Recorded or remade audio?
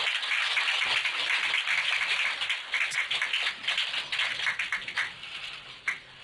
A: recorded